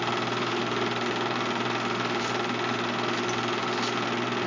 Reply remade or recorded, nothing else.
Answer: recorded